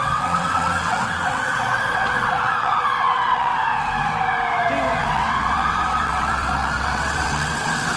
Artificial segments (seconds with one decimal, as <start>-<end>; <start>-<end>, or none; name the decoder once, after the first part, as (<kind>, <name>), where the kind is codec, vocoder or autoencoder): 0.0-3.5 (vocoder, WaveNeXt); 5.0-8.0